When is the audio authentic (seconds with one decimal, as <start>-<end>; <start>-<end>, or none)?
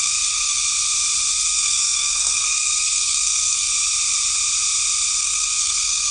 0.6-1.3; 3.7-5.2